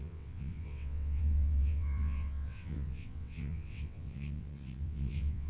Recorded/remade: remade